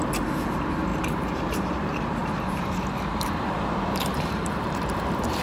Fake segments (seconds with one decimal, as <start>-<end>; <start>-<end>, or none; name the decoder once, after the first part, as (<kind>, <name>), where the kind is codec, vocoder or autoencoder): 0.9-1.7 (vocoder, BigVGAN v2); 2.2-5.4